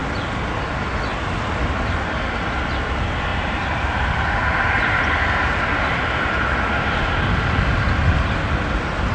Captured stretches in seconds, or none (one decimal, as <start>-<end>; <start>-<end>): 0.0-3.3; 7.1-9.1